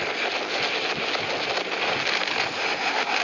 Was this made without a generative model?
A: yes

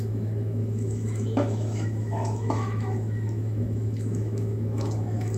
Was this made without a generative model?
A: no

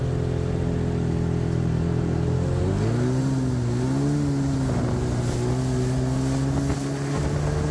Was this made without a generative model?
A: yes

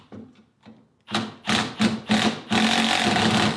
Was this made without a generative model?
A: yes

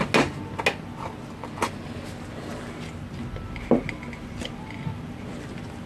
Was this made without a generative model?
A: yes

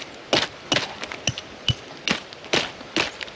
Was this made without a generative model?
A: yes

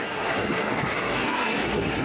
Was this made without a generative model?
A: no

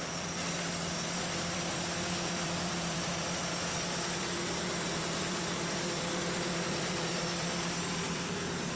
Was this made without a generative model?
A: no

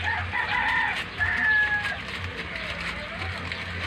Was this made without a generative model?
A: yes